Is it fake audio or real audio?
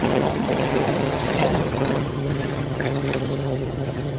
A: fake